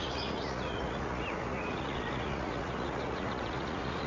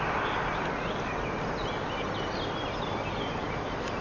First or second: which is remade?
first